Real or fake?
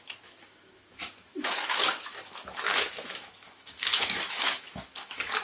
fake